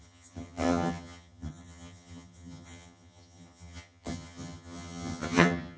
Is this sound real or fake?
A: fake